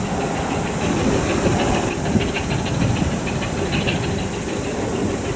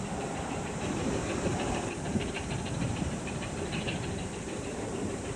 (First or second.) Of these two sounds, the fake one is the second